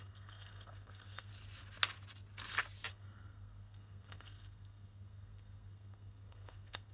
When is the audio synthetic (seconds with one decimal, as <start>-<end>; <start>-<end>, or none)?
0.0-1.3; 2.9-6.9